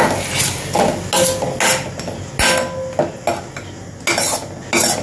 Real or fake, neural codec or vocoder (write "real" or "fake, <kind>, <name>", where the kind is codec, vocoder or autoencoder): real